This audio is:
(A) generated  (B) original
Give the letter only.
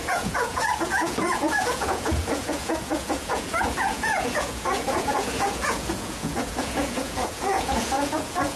A